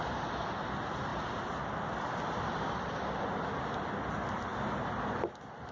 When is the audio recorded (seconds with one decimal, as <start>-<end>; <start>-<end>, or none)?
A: 0.0-1.1; 3.7-5.7